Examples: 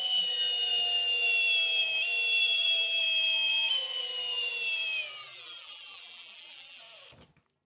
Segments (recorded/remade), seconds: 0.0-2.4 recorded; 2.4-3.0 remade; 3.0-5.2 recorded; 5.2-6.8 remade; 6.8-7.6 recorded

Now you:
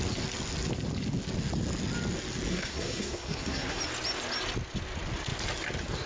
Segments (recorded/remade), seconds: 0.0-2.5 recorded; 2.5-3.8 remade; 3.8-6.1 recorded